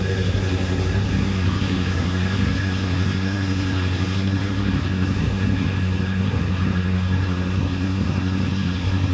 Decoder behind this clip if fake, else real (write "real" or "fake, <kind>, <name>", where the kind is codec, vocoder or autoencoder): fake, codec, SNAC